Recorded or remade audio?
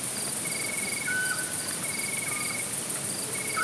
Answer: recorded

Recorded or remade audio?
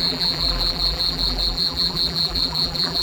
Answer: remade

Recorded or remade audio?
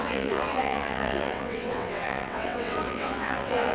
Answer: remade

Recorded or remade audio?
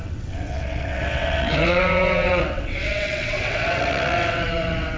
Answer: remade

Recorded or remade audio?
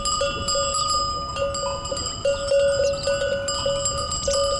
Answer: recorded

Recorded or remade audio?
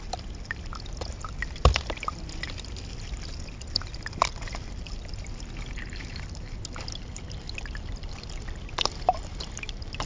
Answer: remade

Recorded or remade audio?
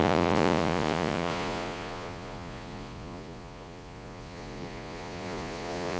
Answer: remade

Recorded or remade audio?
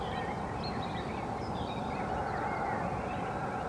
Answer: remade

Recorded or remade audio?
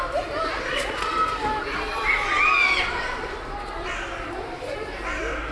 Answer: recorded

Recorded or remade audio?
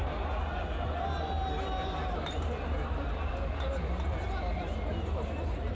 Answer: recorded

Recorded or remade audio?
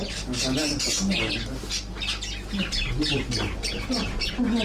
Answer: recorded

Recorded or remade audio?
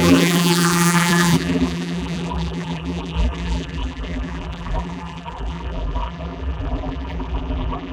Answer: remade